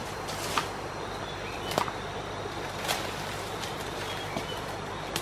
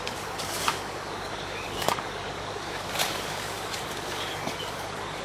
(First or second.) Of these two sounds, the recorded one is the first